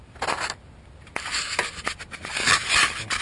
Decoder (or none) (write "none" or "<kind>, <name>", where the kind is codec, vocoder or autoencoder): none